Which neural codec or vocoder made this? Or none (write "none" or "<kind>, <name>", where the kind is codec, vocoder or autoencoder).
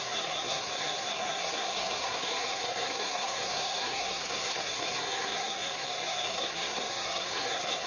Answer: codec, SNAC